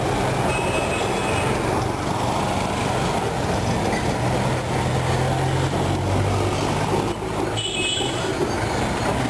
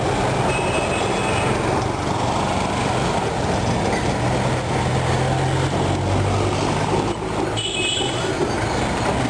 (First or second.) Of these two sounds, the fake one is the second